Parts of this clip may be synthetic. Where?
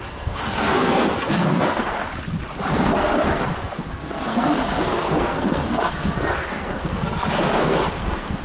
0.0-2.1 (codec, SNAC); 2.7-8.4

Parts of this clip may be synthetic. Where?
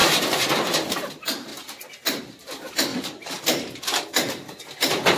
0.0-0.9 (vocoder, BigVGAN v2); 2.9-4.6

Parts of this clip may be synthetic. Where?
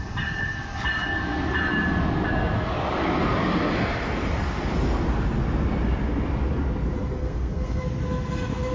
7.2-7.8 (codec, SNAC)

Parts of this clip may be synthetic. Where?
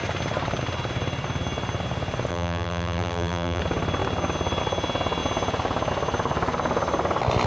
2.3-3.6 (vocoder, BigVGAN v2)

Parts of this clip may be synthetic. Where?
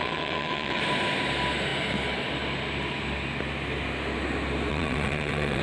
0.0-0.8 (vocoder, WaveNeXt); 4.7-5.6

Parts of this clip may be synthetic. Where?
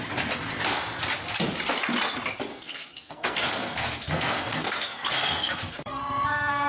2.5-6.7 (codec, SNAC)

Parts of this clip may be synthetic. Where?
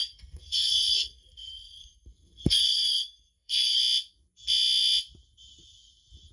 0.0-3.8 (codec, SNAC)